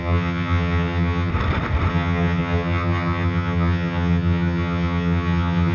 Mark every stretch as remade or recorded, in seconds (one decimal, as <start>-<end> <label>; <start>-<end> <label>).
0.0-1.3 remade; 1.3-1.9 recorded; 1.9-5.7 remade